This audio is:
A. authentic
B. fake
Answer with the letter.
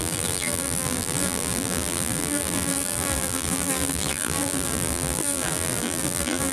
B